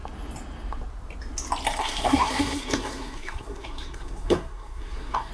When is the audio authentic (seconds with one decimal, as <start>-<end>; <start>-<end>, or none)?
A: 0.0-1.8